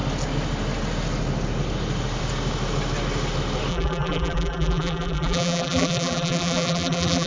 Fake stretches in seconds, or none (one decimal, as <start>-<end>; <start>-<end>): 3.7-7.3

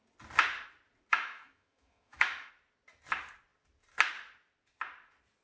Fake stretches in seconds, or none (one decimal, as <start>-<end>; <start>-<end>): 1.1-2.5

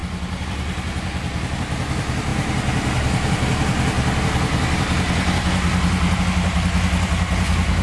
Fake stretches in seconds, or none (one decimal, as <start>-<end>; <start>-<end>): none

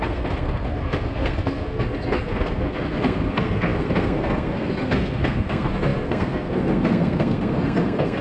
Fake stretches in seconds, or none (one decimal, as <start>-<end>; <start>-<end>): 0.0-8.2

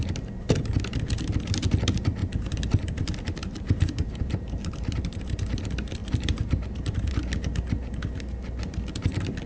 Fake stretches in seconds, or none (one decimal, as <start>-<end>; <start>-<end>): 2.2-2.8; 3.4-5.6; 6.0-7.1

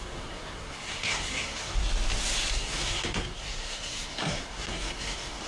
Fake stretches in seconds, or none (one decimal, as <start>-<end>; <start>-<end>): 0.0-1.8; 2.5-5.5

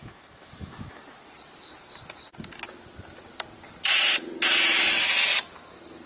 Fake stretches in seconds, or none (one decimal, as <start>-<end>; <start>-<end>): 0.0-1.0

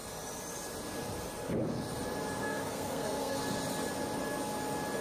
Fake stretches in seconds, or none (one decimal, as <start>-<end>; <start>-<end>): 2.4-3.4